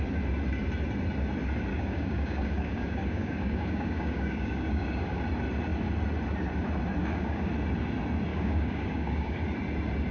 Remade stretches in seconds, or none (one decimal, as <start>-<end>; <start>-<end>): 1.7-5.2; 7.0-7.5; 8.3-9.4